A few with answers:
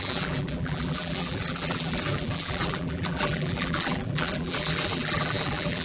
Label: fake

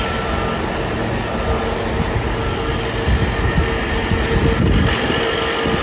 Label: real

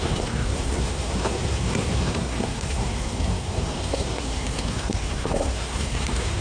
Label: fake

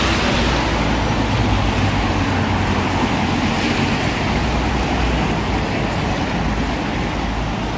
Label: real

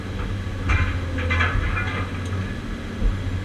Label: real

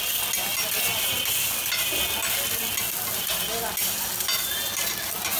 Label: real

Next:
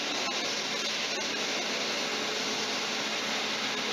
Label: real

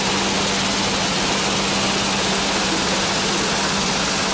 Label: real